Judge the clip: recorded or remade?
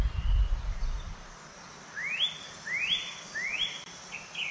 recorded